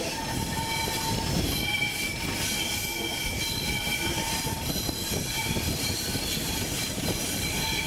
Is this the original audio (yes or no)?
yes